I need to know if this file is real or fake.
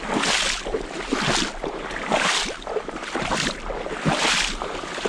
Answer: real